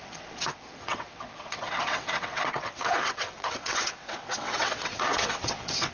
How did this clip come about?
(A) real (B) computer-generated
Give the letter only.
B